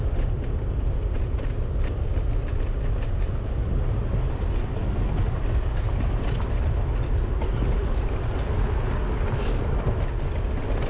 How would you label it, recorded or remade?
recorded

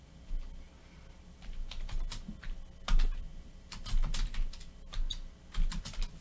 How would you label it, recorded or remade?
recorded